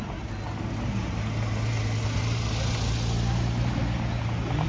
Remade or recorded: recorded